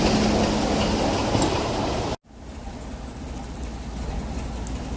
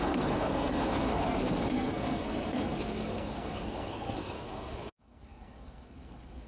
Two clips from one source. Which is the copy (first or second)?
second